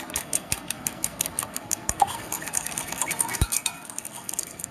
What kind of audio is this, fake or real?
fake